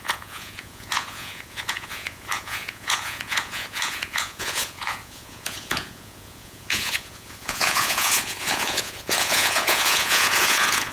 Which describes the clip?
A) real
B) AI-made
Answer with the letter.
B